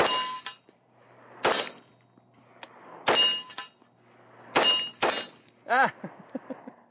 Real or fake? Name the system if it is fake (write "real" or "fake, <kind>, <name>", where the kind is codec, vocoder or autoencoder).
real